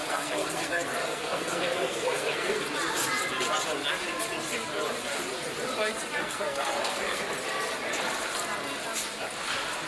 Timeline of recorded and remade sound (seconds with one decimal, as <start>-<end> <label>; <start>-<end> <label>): 0.0-2.6 remade; 2.6-6.2 recorded; 6.2-7.2 remade; 7.2-9.9 recorded